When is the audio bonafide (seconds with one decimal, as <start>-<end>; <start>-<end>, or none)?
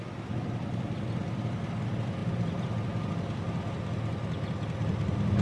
0.0-2.2; 3.1-5.4